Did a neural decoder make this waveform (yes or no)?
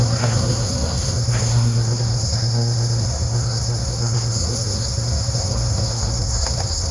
yes